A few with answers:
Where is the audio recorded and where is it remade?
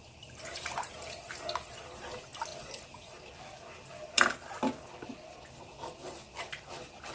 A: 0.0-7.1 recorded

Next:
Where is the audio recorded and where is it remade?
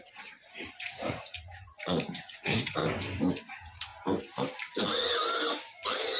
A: 0.0-2.8 remade; 2.8-3.5 recorded; 3.5-3.9 remade; 3.9-6.2 recorded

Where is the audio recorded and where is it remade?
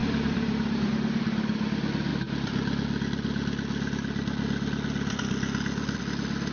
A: 0.0-0.9 remade; 0.9-6.5 recorded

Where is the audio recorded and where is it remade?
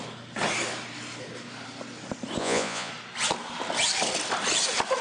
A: 0.0-2.4 recorded; 2.4-2.9 remade; 2.9-5.0 recorded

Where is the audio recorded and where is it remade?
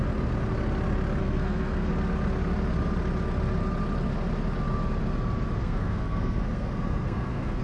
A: 0.0-1.2 recorded; 1.2-1.9 remade; 1.9-5.6 recorded; 5.6-7.6 remade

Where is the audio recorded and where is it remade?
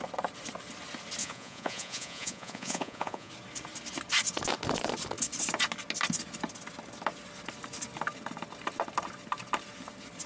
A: 0.0-1.2 recorded; 1.2-3.3 remade; 3.3-10.3 recorded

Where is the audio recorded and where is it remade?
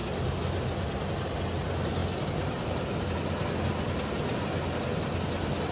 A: 0.0-5.7 recorded